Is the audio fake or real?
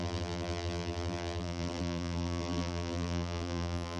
fake